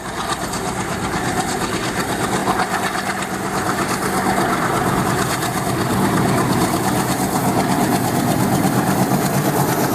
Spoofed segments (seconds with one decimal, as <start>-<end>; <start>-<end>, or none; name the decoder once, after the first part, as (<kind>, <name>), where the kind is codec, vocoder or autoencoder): none